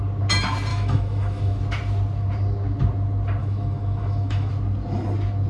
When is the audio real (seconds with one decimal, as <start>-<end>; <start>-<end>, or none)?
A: 0.0-0.7; 1.6-3.4; 4.5-5.5